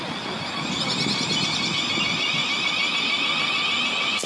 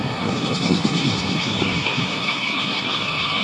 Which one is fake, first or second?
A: second